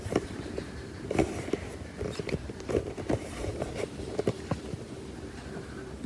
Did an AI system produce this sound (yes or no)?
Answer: yes